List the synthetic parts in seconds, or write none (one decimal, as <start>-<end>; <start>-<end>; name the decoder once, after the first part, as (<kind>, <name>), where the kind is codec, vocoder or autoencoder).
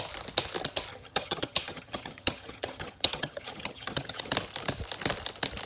0.9-4.3 (vocoder, HiFi-GAN)